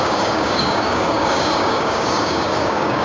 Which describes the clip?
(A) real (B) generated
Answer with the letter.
B